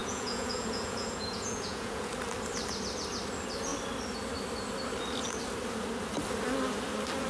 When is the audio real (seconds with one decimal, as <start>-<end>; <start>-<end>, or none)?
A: 2.1-7.3